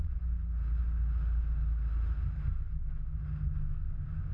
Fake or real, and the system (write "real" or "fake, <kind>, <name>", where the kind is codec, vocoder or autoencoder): real